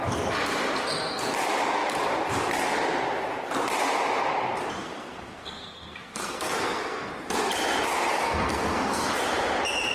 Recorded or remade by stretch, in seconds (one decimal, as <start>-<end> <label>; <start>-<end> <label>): 0.0-4.8 recorded; 4.8-7.1 remade; 7.1-8.1 recorded; 8.1-9.1 remade; 9.1-9.9 recorded